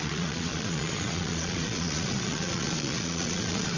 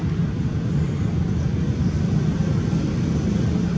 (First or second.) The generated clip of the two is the first